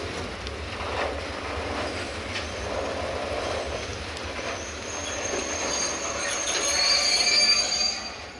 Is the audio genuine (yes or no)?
no